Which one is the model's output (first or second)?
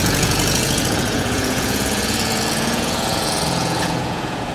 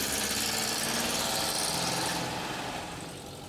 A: first